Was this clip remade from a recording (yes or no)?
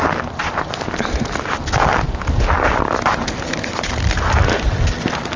no